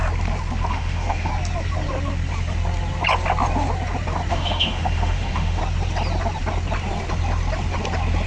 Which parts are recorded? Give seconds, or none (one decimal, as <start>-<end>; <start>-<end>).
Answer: 0.0-0.7; 1.3-4.3; 5.6-8.3